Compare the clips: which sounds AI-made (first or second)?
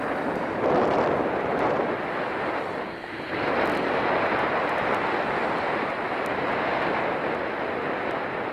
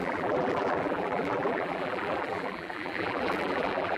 second